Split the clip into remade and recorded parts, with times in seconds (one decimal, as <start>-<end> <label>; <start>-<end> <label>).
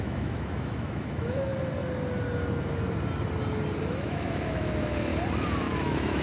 0.0-1.5 remade; 1.5-3.9 recorded; 3.9-5.1 remade; 5.1-5.6 recorded; 5.6-6.2 remade